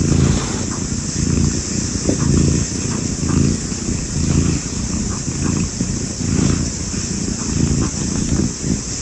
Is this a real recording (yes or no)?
yes